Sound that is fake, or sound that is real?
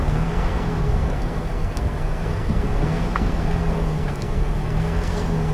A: fake